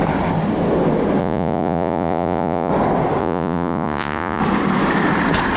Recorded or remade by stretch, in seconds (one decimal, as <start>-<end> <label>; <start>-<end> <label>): 0.0-1.2 recorded; 1.2-2.7 remade; 2.7-3.2 recorded; 3.2-4.4 remade; 4.4-5.6 recorded